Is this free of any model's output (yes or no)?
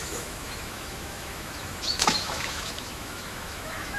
no